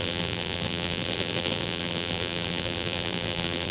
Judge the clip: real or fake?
fake